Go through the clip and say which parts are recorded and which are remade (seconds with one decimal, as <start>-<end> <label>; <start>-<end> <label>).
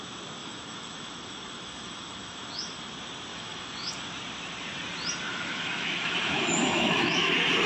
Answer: 0.0-0.4 recorded; 0.4-2.9 remade; 2.9-3.3 recorded; 3.3-3.9 remade; 3.9-5.3 recorded; 5.3-7.3 remade; 7.3-7.7 recorded